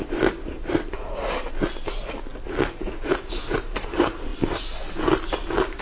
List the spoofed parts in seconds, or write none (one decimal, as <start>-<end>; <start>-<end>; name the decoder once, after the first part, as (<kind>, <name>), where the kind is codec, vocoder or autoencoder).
none